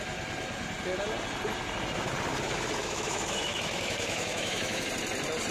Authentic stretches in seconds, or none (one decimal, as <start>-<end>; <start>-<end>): 0.0-2.8; 4.9-5.5

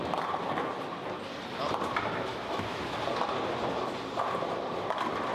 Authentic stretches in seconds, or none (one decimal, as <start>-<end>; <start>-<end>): 0.0-2.3; 3.0-5.3

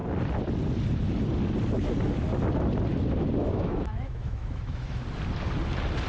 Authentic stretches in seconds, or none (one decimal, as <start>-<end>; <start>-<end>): 0.0-3.4; 5.0-6.1

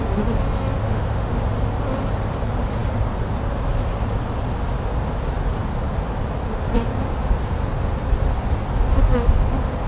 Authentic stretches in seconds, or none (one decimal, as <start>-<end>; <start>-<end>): 0.0-0.8; 1.4-9.9

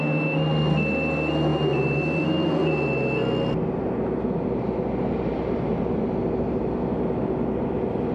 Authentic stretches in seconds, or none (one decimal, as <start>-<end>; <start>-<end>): 0.0-8.1

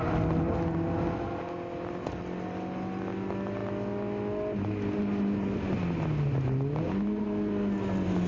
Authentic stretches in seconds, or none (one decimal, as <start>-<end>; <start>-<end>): 0.0-8.3

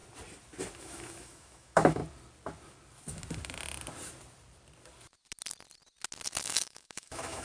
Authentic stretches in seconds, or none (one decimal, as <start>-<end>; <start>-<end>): 0.0-0.8; 2.0-6.4

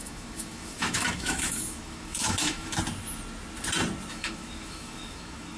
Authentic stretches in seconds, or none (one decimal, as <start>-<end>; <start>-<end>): 2.8-4.1